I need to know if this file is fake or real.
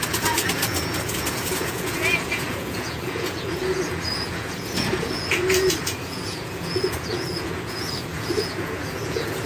fake